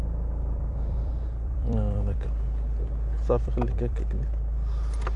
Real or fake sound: fake